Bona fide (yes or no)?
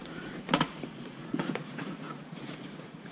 no